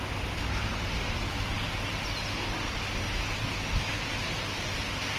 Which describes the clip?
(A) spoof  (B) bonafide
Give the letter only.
B